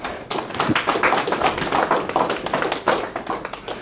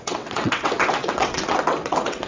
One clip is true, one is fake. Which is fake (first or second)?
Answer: second